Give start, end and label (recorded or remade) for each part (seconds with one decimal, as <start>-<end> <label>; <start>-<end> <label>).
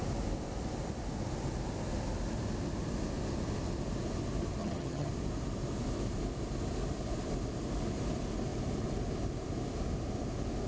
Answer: 0.0-4.6 recorded; 4.6-5.1 remade; 5.1-10.7 recorded